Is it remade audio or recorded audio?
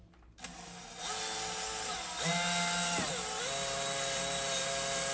recorded